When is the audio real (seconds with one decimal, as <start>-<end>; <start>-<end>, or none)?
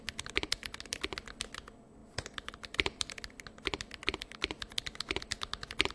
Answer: 0.0-5.9